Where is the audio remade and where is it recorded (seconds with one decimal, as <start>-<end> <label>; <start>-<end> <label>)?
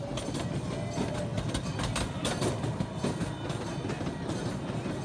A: 0.0-5.0 recorded